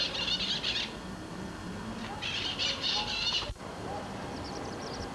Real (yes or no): yes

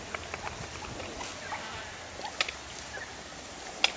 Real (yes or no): yes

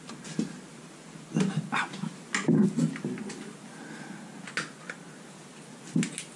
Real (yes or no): yes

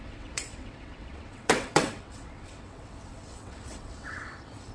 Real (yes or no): no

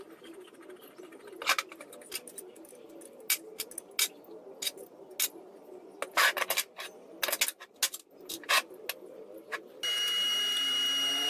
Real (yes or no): yes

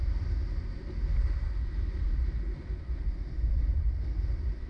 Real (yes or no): yes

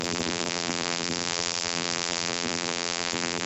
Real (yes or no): no